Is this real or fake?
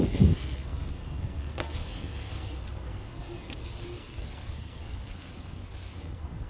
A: fake